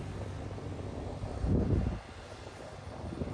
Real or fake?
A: real